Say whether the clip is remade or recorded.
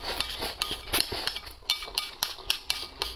recorded